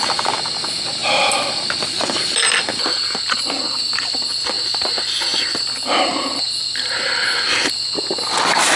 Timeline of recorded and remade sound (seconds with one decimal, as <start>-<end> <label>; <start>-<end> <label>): 0.0-8.8 recorded